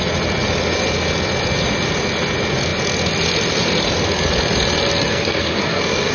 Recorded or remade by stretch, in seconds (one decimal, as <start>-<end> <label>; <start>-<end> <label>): 0.0-5.1 recorded; 5.1-6.1 remade